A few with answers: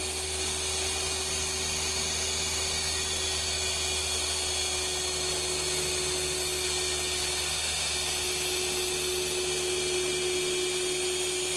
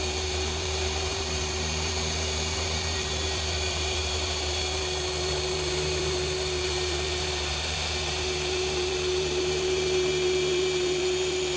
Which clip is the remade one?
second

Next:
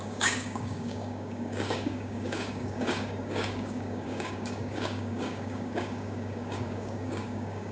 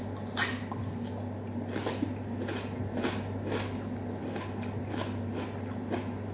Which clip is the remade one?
first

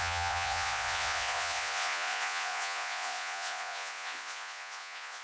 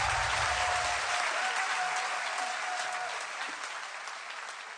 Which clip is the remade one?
first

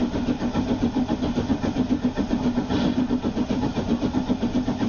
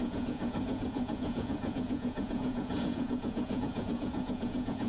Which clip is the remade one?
second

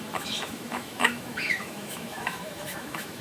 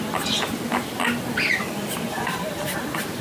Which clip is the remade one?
first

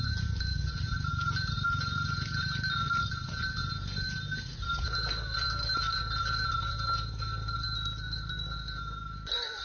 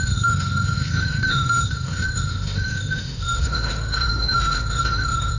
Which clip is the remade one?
second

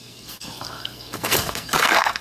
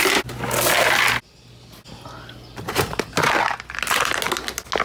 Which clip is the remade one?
first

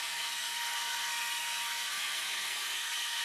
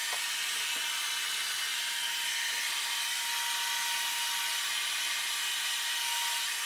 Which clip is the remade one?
first